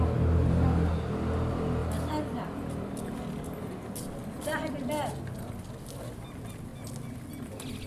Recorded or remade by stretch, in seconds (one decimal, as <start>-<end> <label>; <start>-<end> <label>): 0.0-7.9 recorded